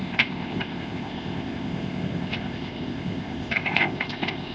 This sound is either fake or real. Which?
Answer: fake